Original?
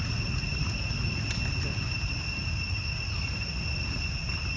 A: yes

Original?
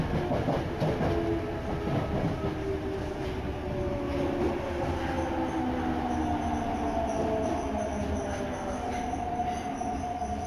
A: yes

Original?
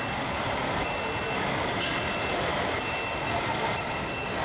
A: yes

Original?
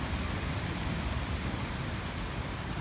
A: yes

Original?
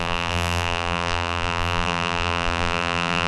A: no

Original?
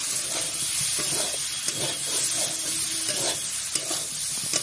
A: yes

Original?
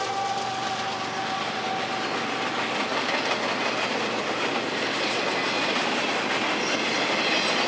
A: yes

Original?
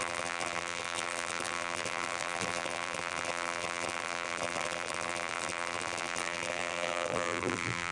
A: no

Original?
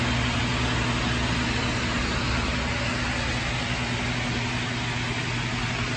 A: yes